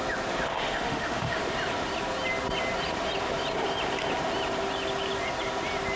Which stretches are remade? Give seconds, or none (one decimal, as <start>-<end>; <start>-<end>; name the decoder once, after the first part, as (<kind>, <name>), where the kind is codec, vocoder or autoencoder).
0.5-1.4 (autoencoder, DAC-VAE)